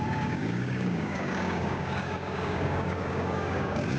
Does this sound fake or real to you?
fake